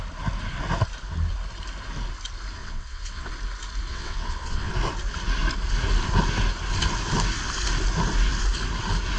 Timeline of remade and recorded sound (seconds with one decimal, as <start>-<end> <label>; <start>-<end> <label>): 0.0-2.6 recorded; 2.6-3.3 remade; 3.3-3.9 recorded; 3.9-4.7 remade; 4.7-9.2 recorded